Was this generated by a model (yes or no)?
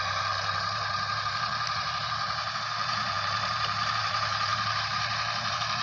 yes